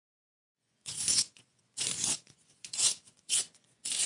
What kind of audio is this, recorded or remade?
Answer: remade